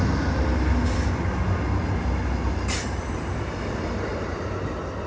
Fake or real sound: real